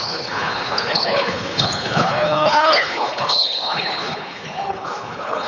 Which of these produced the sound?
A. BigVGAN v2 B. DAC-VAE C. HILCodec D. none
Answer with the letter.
C